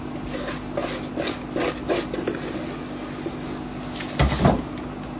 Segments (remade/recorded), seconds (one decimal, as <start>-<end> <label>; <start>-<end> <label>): 0.0-5.2 recorded